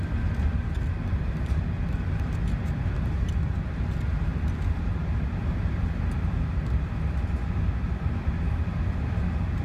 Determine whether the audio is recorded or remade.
recorded